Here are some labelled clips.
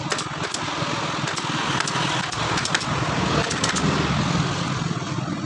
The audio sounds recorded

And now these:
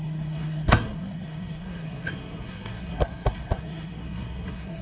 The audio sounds remade